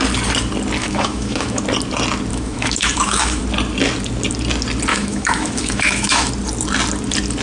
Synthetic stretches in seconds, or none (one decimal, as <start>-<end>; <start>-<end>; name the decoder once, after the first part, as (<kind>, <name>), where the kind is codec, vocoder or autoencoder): 0.8-1.6 (autoencoder, DAC-VAE); 2.3-3.4; 4.9-6.3